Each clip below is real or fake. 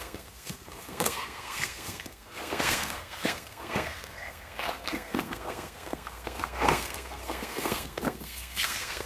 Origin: fake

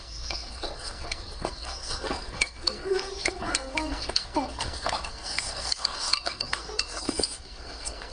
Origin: fake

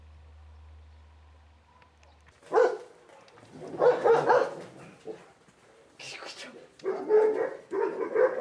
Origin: real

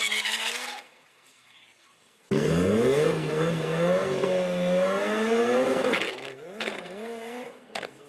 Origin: fake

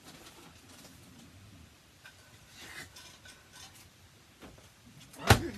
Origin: real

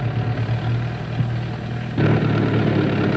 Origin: real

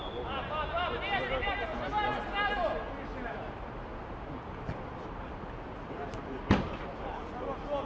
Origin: real